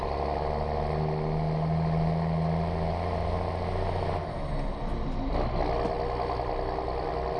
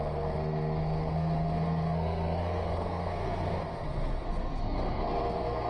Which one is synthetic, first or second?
second